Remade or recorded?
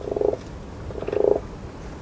recorded